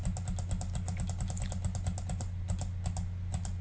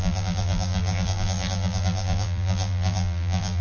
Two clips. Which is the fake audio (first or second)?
second